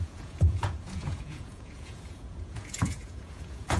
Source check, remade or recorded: remade